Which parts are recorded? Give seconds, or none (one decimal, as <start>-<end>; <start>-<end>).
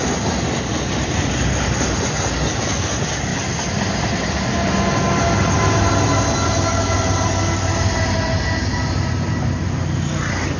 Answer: 0.0-10.6